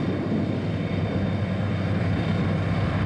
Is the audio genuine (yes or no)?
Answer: yes